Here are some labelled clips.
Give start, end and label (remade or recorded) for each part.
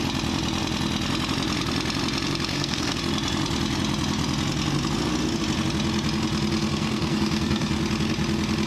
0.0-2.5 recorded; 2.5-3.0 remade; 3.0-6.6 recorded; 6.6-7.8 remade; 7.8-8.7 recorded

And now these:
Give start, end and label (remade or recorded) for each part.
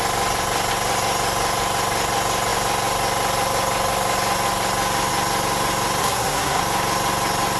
0.0-6.0 recorded; 6.0-6.6 remade; 6.6-7.6 recorded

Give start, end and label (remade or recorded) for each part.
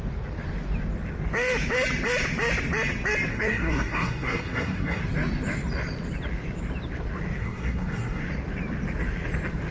0.0-3.3 recorded; 3.3-5.0 remade; 5.0-7.4 recorded; 7.4-8.2 remade; 8.2-9.7 recorded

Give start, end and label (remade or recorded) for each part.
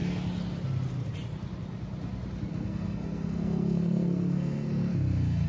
0.0-2.5 recorded; 2.5-5.5 remade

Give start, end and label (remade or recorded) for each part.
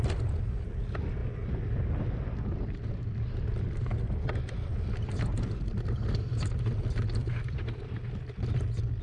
0.0-9.0 recorded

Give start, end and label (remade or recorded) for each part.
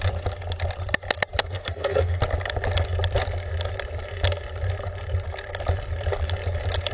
0.0-1.4 recorded; 1.4-2.2 remade; 2.2-6.9 recorded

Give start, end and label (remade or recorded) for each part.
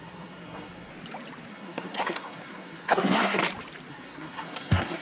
0.0-0.9 remade; 0.9-1.5 recorded; 1.5-3.4 remade; 3.4-3.9 recorded; 3.9-5.0 remade